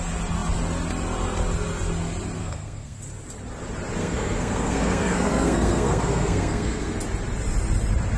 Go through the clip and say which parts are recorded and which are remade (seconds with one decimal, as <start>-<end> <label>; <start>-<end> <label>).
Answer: 0.0-2.4 recorded; 2.4-3.0 remade; 3.0-4.0 recorded; 4.0-6.9 remade; 6.9-8.2 recorded